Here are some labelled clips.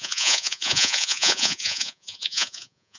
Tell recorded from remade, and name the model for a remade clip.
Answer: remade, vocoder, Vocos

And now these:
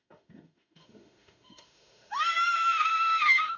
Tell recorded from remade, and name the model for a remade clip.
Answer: remade, autoencoder, DAC-VAE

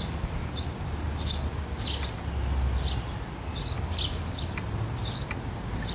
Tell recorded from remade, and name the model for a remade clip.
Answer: recorded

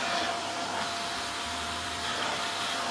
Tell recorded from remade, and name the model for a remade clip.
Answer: remade, vocoder, BigVGAN v2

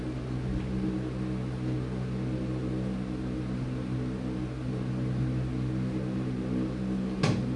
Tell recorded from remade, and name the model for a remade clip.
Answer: recorded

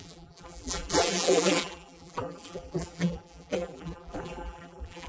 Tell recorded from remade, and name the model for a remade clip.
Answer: remade, vocoder, BigVGAN v2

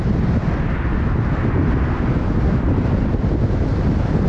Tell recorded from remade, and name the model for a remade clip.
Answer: recorded